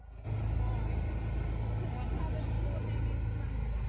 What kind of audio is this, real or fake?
real